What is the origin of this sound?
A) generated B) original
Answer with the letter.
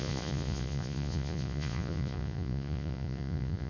A